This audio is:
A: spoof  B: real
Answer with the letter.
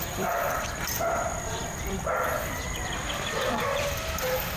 A